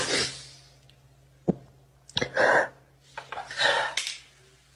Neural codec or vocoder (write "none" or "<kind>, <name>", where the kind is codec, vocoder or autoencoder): none